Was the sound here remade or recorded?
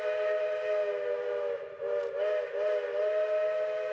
recorded